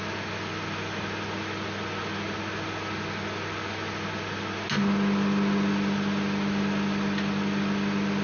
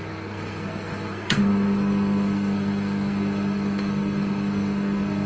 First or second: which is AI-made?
second